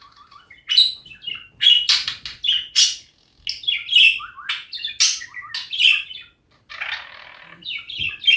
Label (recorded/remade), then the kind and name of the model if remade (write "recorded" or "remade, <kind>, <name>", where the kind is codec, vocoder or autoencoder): recorded